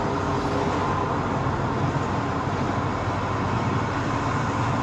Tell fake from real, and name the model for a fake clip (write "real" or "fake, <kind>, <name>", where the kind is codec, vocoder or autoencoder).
real